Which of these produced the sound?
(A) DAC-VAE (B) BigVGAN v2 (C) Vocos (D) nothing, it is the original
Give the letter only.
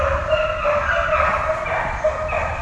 D